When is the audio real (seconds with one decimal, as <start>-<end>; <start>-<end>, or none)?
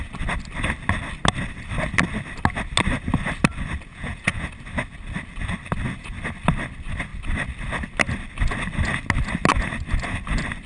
0.0-3.9; 4.5-10.7